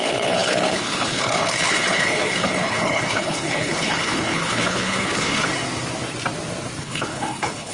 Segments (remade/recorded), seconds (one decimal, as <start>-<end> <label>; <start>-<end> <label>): 0.0-5.5 remade; 5.5-6.8 recorded; 6.8-7.7 remade